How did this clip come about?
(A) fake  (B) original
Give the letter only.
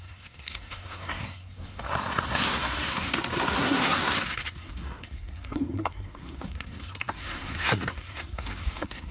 A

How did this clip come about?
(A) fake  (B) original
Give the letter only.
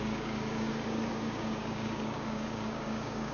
A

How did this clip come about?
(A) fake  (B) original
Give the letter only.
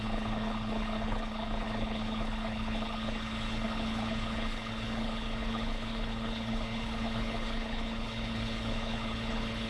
A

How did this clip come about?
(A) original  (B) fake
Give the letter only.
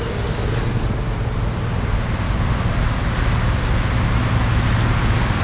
A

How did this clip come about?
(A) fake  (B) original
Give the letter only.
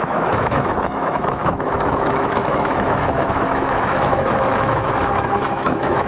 A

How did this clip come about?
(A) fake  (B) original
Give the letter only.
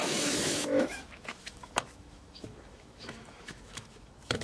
A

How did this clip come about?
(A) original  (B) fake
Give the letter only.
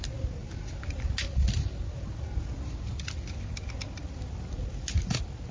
A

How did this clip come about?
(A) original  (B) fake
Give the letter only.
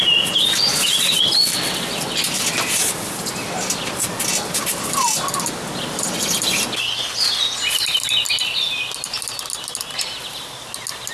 A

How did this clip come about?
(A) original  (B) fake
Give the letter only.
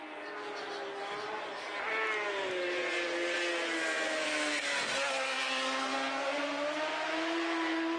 A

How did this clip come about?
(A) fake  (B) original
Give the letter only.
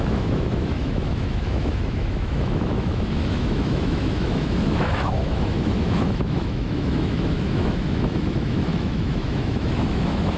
A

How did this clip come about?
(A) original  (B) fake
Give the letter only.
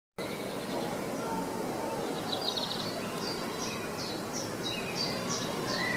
A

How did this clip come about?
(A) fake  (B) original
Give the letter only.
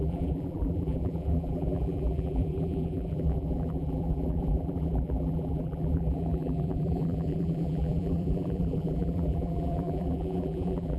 A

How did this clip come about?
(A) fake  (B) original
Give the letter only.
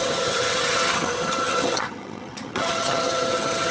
A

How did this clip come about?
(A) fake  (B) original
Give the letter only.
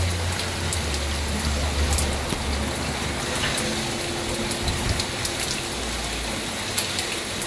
B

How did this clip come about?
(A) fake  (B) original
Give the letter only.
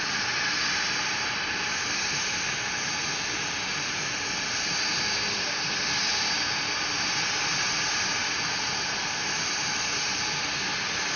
B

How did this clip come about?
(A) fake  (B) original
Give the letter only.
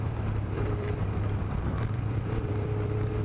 A